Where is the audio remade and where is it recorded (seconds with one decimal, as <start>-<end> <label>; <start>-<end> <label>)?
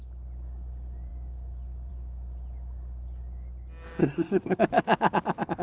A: 0.0-4.0 recorded; 4.0-4.6 remade; 4.6-5.6 recorded